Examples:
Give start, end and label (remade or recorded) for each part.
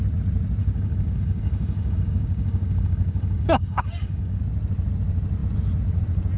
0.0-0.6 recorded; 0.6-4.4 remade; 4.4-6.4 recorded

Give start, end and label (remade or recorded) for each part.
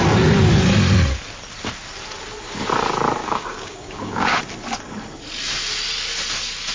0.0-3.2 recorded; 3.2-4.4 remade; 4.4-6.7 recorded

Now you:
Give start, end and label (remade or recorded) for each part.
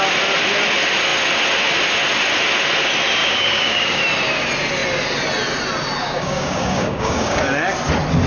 0.0-3.2 recorded; 3.2-4.0 remade; 4.0-6.0 recorded; 6.0-7.4 remade; 7.4-8.3 recorded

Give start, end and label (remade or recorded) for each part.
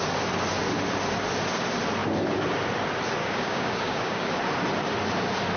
0.0-3.2 recorded; 3.2-4.4 remade; 4.4-5.6 recorded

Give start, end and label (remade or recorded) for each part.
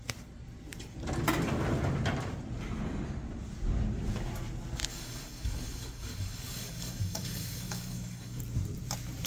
0.0-4.9 recorded; 4.9-8.4 remade; 8.4-9.3 recorded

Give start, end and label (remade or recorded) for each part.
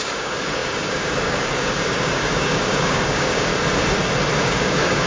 0.0-3.5 remade; 3.5-4.4 recorded; 4.4-5.1 remade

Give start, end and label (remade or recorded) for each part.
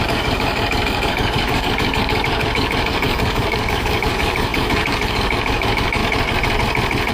0.0-6.0 remade; 6.0-7.1 recorded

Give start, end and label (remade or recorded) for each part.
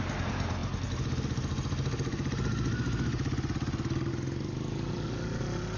0.0-5.8 recorded